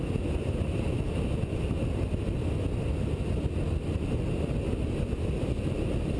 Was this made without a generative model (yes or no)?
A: yes